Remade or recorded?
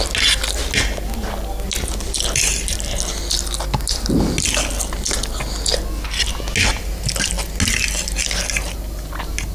recorded